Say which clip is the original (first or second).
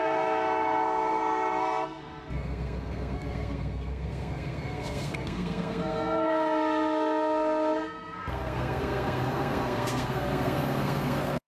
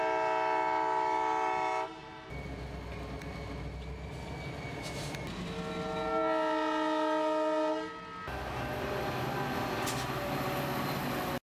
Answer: second